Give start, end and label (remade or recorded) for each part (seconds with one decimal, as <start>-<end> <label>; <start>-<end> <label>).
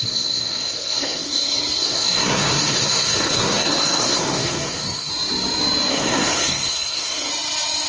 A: 0.0-5.1 remade; 5.1-5.9 recorded; 5.9-7.3 remade; 7.3-7.9 recorded